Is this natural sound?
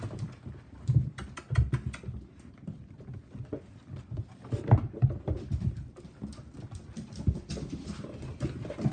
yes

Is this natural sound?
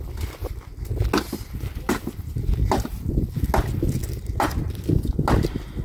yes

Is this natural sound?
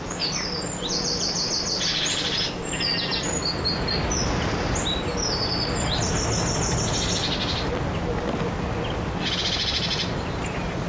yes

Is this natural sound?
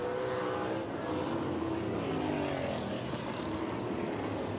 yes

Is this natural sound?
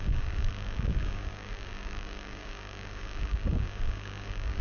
no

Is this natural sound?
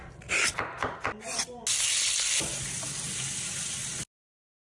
yes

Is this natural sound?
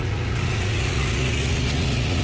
no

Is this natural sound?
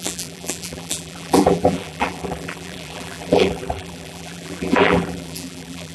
no